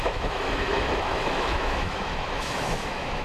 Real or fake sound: fake